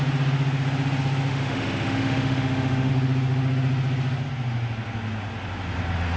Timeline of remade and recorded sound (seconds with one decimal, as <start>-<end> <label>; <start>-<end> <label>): 0.0-1.3 recorded; 1.3-2.9 remade; 2.9-6.2 recorded